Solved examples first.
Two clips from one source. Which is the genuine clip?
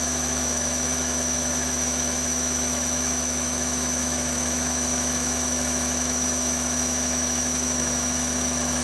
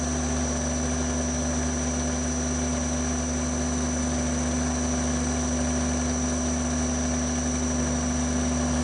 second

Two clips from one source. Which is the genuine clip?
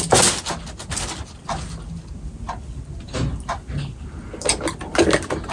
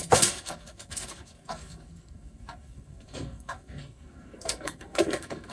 first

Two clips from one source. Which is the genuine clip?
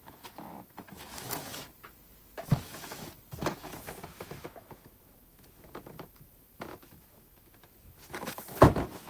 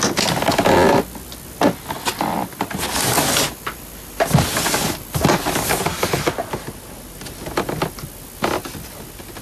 second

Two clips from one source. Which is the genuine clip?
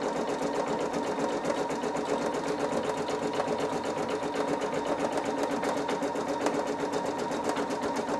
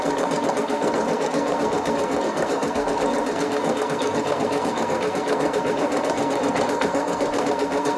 first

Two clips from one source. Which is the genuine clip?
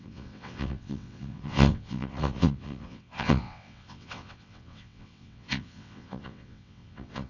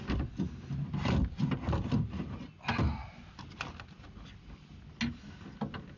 second